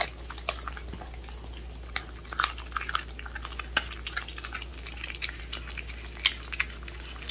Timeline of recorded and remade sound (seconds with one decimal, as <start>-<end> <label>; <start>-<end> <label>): 0.0-7.3 recorded